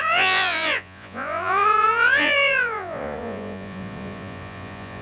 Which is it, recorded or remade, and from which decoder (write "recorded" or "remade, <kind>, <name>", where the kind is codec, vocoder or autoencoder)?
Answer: remade, vocoder, Vocos